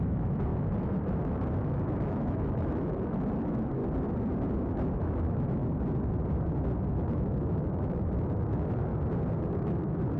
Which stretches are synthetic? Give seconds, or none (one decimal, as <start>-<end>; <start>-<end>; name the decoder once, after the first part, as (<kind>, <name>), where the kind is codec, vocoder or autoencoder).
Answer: 0.0-3.8 (autoencoder, DAC-VAE); 4.5-5.6; 6.9-8.9; 9.5-10.2